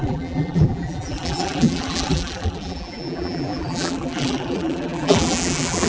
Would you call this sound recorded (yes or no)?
no